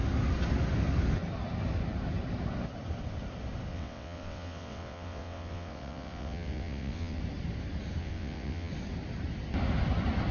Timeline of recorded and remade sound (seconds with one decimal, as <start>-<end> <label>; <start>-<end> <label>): 0.0-3.7 recorded; 3.7-7.2 remade; 7.2-8.0 recorded; 8.0-8.7 remade; 8.7-10.3 recorded